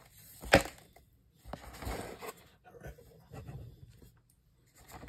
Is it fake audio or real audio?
real